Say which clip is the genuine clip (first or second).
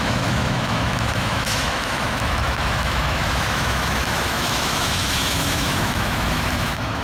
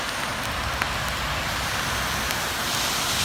second